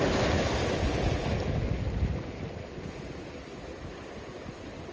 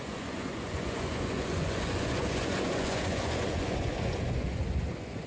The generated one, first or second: second